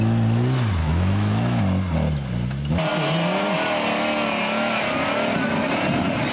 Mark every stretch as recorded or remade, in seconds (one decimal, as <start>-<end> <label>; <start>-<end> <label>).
0.0-0.8 recorded; 0.8-1.6 remade; 1.6-6.3 recorded